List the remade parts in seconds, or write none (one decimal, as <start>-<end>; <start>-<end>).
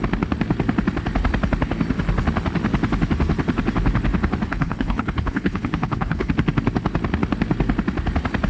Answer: 4.5-6.3